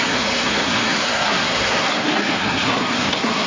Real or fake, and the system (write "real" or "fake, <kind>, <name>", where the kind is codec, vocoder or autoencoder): fake, codec, SNAC